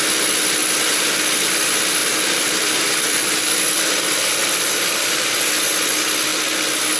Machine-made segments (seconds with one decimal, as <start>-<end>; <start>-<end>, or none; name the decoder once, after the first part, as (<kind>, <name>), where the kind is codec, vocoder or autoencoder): 0.6-1.2 (vocoder, BigVGAN v2); 2.0-5.5; 6.3-7.0